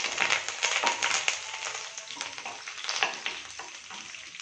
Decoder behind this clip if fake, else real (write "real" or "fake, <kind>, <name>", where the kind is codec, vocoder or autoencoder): real